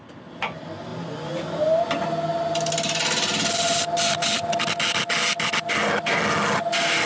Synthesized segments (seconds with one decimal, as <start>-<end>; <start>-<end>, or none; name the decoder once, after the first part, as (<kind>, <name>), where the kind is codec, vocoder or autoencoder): none